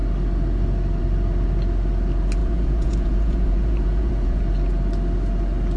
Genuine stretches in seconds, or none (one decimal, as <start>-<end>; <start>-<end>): 0.0-2.4; 4.4-5.8